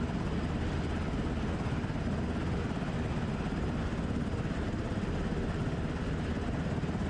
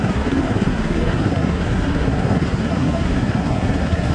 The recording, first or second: first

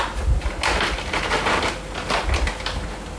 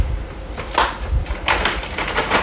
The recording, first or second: first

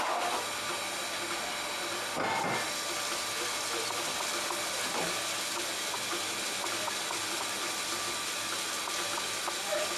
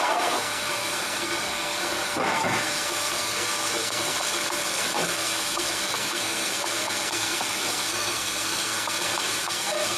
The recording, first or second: first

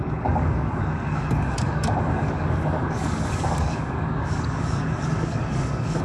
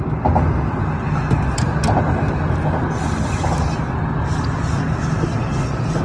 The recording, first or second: second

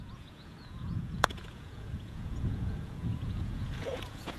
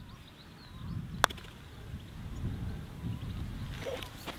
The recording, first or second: second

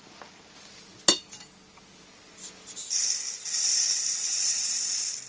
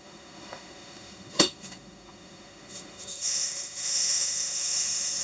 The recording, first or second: first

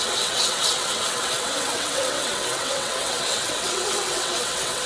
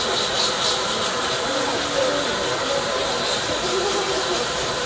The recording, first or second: second